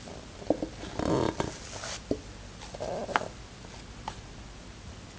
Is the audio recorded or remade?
recorded